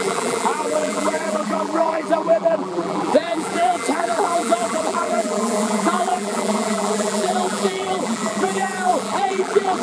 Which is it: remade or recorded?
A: remade